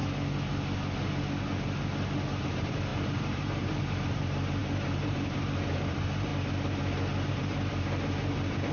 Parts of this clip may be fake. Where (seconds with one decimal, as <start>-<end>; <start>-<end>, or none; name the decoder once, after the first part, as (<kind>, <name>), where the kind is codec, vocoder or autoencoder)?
2.4-6.3 (vocoder, BigVGAN v2); 7.3-8.7